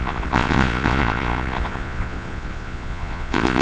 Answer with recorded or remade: remade